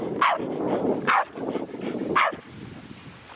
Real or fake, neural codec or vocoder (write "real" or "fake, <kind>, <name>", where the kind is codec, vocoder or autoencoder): real